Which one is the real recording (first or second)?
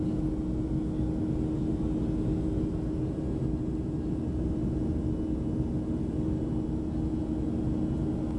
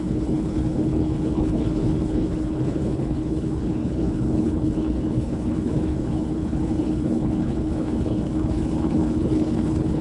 first